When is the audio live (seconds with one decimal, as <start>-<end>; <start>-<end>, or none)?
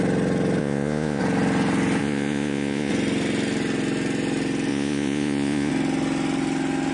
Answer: 0.0-0.6; 1.2-2.0; 2.9-4.7; 5.7-6.9